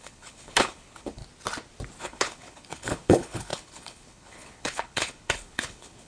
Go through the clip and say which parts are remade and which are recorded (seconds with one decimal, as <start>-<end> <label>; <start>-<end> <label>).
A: 0.0-1.2 remade; 1.2-2.0 recorded; 2.0-6.1 remade